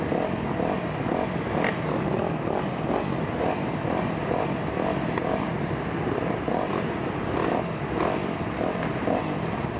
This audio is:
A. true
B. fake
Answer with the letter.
A